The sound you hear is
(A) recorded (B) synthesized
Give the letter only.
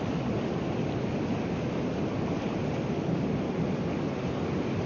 A